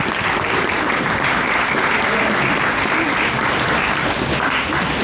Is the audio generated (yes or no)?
no